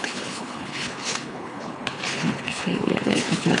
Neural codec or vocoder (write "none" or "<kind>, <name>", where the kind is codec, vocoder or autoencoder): codec, HILCodec